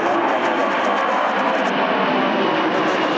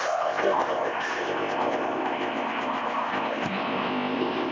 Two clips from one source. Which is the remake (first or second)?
second